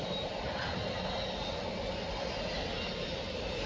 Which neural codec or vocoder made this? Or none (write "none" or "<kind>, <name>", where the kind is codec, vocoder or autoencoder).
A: none